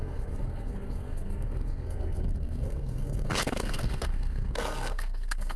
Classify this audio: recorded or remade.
remade